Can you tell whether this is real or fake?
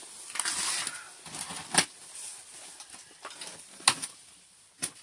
real